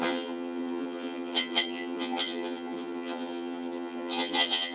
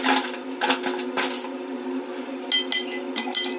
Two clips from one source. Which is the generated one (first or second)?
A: first